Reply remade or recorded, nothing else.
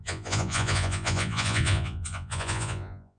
remade